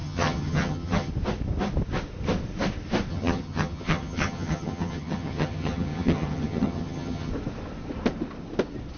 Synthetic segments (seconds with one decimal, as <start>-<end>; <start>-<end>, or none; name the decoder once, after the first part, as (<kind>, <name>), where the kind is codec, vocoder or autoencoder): 0.0-1.1 (vocoder, HiFi-GAN); 3.1-7.3